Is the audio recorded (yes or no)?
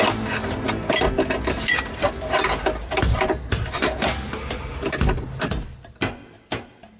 yes